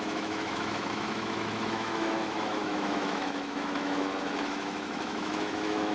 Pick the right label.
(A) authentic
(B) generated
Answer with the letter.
B